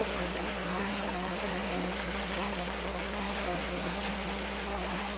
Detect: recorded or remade remade